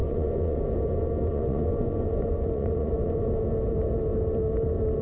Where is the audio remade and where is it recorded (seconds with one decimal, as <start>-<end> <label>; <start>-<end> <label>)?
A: 0.0-0.6 remade; 0.6-1.3 recorded; 1.3-3.3 remade; 3.3-5.0 recorded